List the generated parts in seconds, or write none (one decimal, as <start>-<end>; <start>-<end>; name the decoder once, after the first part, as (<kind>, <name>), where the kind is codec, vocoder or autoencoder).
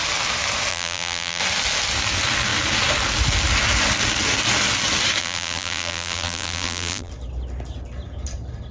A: 0.7-1.4 (vocoder, BigVGAN v2); 5.2-7.1